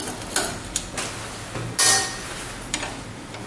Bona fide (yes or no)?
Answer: yes